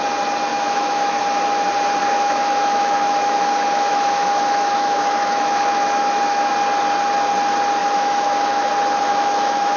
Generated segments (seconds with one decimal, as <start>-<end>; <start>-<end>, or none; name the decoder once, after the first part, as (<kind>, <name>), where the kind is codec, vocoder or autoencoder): 0.5-1.2 (autoencoder, DAC-VAE); 2.0-6.5; 7.8-8.7; 9.1-9.8